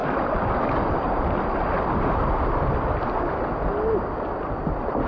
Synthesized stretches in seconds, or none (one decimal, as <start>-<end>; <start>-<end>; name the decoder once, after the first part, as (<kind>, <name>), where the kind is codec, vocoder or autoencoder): none